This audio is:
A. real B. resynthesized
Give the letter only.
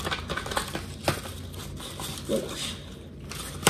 A